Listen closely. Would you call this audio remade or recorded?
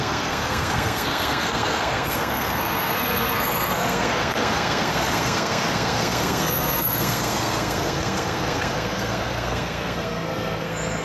remade